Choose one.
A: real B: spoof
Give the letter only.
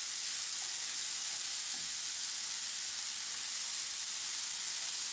A